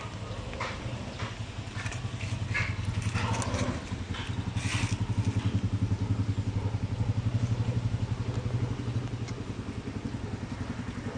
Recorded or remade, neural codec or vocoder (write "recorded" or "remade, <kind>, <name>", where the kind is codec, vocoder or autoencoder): recorded